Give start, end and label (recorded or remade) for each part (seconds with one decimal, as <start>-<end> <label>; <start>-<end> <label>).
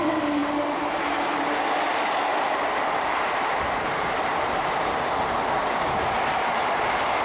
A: 0.0-0.4 recorded; 0.4-1.6 remade; 1.6-2.3 recorded; 2.3-6.6 remade; 6.6-7.2 recorded